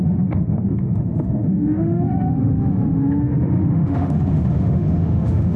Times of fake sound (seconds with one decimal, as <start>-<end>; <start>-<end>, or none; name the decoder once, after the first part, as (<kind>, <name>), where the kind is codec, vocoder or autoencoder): 0.0-5.6 (autoencoder, DAC-VAE)